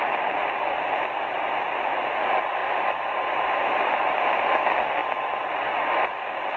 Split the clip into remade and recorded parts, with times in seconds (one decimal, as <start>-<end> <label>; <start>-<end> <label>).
0.0-6.6 recorded